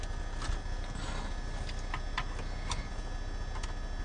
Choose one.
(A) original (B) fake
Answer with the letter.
A